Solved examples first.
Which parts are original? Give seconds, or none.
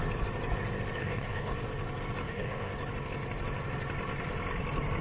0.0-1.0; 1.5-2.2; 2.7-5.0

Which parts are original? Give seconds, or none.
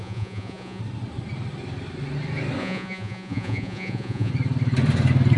0.8-2.6; 4.3-5.4